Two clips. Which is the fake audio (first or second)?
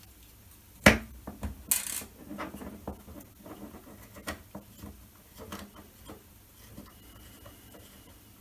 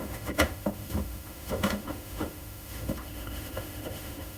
second